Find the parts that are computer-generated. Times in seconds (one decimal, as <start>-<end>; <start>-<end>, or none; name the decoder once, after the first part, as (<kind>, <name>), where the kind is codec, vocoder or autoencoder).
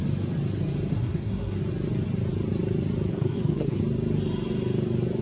0.9-1.6 (codec, SNAC); 3.1-3.8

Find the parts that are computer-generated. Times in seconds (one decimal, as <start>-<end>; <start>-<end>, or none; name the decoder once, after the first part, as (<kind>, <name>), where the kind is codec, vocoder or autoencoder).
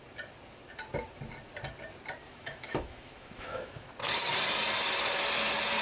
2.2-3.9 (autoencoder, DAC-VAE)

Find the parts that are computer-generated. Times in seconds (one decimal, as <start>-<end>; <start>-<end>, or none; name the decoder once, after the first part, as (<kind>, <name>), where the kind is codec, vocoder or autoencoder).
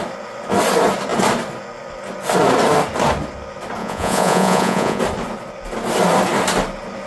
3.8-5.0 (vocoder, Vocos)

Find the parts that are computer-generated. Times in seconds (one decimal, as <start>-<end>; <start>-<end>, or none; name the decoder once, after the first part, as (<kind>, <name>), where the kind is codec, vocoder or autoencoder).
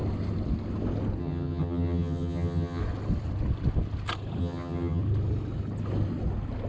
1.2-2.8 (vocoder, HiFi-GAN); 4.4-5.0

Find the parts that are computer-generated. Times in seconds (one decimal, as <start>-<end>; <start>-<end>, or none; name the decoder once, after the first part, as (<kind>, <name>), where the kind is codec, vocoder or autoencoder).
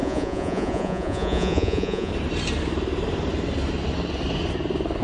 0.0-2.1 (vocoder, Vocos)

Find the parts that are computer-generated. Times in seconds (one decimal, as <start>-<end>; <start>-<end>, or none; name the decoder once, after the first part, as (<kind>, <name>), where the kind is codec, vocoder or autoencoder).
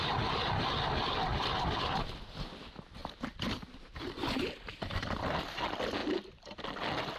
3.0-5.0 (vocoder, BigVGAN v2); 6.0-6.6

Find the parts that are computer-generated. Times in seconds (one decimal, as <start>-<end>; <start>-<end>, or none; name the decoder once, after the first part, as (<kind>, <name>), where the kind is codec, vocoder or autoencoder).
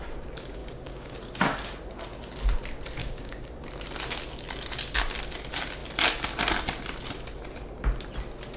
0.6-1.1 (codec, DAC); 3.0-3.7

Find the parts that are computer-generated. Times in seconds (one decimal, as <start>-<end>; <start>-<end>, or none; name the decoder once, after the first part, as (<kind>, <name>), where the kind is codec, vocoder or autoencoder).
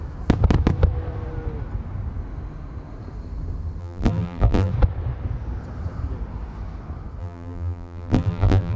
3.8-4.7 (vocoder, BigVGAN v2); 7.2-8.8